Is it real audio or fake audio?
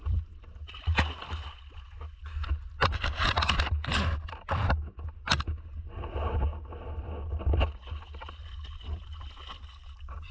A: real